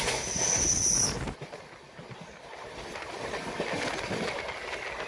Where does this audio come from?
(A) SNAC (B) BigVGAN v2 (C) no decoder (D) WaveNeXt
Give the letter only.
C